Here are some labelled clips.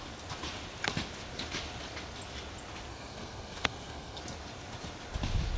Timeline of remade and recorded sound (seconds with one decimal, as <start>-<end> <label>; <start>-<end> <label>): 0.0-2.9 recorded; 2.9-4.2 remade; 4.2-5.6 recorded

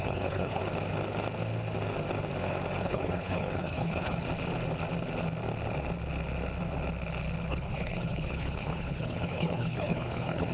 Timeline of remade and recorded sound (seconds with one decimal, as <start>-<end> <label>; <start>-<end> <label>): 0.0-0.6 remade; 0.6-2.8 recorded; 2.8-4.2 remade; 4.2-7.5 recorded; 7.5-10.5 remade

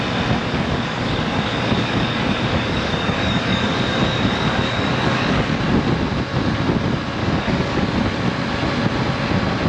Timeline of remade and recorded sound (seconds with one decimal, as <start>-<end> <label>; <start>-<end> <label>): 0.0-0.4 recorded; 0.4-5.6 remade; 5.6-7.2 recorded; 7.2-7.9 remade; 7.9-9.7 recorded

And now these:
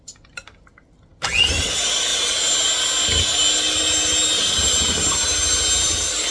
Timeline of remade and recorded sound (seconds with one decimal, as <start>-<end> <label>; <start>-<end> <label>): 0.0-1.1 remade; 1.1-1.6 recorded; 1.6-2.1 remade; 2.1-5.8 recorded; 5.8-6.3 remade